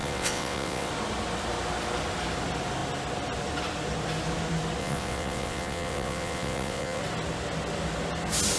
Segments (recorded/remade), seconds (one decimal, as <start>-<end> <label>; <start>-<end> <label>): 0.0-0.9 remade; 0.9-4.8 recorded; 4.8-7.0 remade; 7.0-8.6 recorded